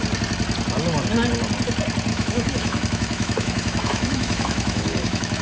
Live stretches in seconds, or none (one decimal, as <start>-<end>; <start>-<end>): 0.0-2.1

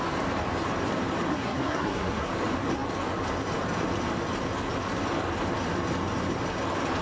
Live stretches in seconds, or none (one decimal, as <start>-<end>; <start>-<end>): 0.0-1.3; 2.3-7.0

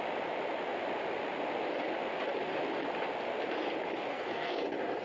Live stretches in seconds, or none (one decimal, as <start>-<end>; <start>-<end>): 0.0-4.1; 4.6-5.0